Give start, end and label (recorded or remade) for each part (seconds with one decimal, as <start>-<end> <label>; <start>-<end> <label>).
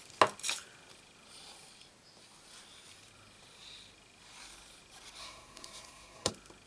0.0-5.2 recorded; 5.2-6.3 remade; 6.3-6.7 recorded